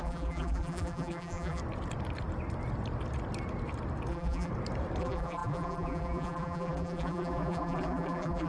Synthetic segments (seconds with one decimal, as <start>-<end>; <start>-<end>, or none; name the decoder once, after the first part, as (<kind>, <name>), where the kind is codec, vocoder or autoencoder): 0.0-1.6 (vocoder, BigVGAN v2); 4.1-4.5; 5.0-8.5